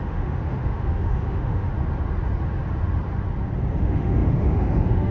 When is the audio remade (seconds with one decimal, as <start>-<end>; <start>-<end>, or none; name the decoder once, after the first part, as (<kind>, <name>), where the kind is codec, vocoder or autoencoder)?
0.0-1.7 (autoencoder, DAC-VAE); 3.8-5.1